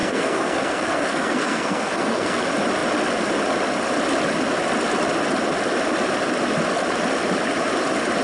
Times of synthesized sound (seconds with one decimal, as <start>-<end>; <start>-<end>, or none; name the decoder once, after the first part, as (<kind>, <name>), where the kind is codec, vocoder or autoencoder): 0.0-2.4 (codec, SNAC)